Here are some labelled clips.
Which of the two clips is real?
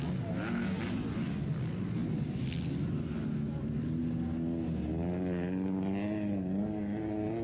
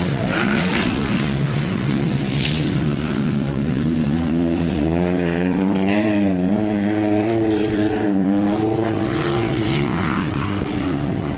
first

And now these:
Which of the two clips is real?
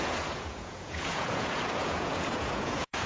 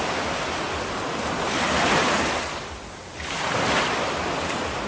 second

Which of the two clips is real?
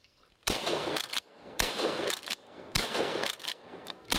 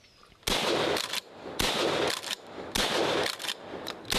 second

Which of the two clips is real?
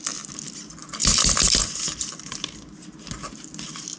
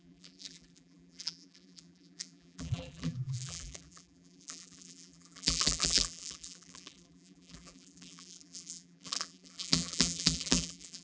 first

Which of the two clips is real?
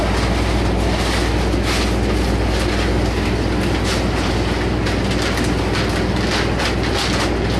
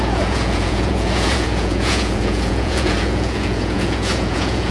first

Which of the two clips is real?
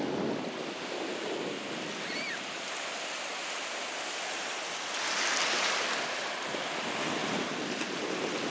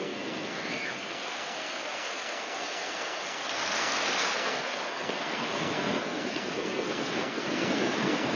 first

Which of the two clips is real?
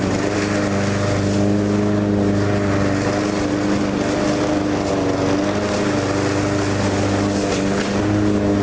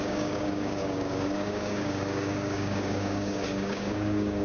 first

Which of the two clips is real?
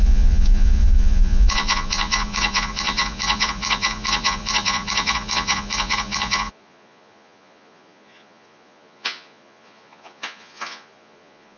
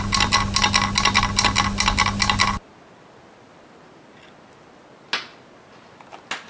second